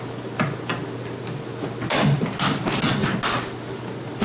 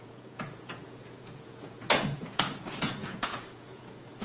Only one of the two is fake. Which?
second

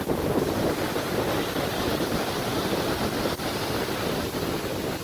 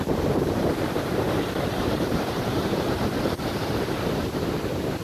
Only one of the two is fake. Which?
second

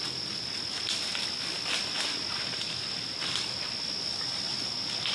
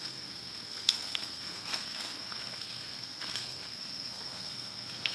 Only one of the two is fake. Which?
second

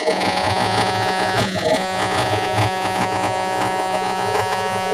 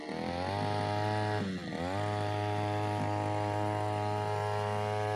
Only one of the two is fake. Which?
first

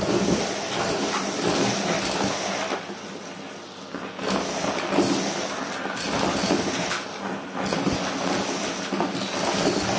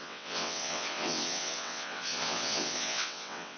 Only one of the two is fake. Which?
second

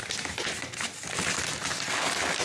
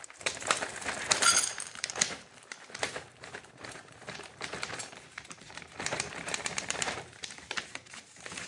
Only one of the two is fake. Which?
second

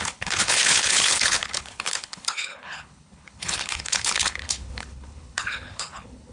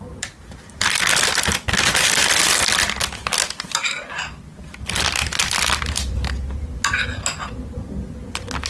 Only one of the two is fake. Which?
first